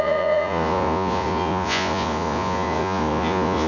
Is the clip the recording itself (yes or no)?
no